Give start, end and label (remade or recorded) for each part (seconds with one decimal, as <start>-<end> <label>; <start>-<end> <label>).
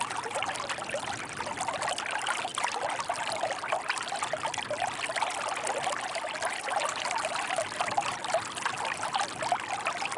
0.0-10.2 recorded